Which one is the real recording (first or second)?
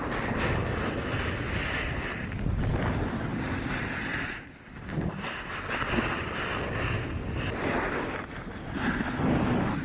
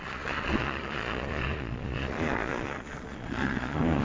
first